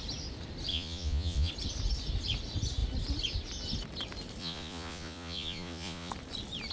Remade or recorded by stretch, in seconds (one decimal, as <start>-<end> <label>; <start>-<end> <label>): 0.0-0.7 recorded; 0.7-1.5 remade; 1.5-4.4 recorded; 4.4-6.1 remade; 6.1-6.7 recorded

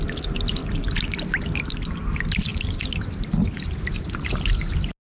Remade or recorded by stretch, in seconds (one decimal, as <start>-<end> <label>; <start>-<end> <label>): 0.0-5.0 recorded

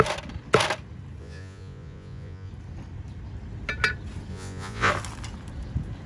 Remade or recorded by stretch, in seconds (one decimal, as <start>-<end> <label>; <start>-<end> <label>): 0.0-1.2 recorded; 1.2-2.5 remade; 2.5-4.3 recorded; 4.3-4.9 remade; 4.9-6.1 recorded

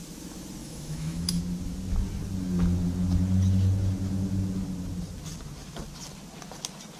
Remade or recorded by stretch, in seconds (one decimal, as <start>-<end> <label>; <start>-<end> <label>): 0.0-0.6 recorded; 0.6-1.4 remade; 1.4-7.0 recorded

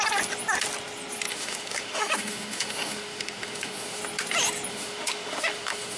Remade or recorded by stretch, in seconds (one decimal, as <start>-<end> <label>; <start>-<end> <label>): 0.0-1.3 recorded; 1.3-4.0 remade; 4.0-4.7 recorded; 4.7-6.0 remade

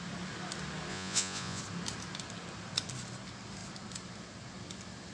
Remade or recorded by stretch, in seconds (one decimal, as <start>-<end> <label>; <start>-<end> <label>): 0.0-0.9 recorded; 0.9-1.6 remade; 1.6-5.1 recorded

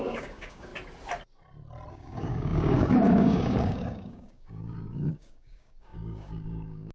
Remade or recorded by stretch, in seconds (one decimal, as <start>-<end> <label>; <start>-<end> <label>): 0.0-0.7 remade; 0.7-1.9 recorded; 1.9-6.9 remade